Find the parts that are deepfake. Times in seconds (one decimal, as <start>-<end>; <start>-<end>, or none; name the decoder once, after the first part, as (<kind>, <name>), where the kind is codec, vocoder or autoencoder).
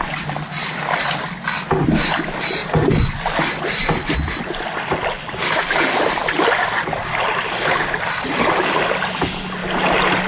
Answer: none